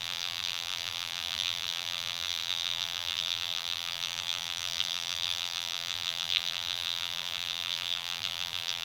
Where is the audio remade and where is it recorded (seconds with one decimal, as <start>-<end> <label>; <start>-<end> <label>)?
0.0-8.8 remade